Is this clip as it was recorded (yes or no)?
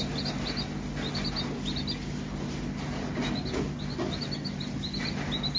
yes